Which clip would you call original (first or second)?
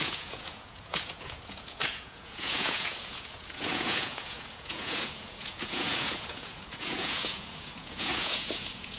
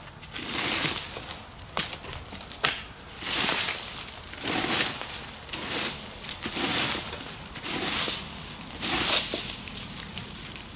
second